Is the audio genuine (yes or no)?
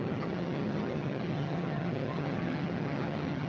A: no